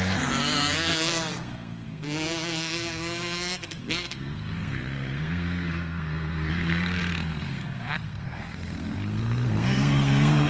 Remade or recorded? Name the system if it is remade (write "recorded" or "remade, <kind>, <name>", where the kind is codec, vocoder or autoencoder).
remade, codec, SNAC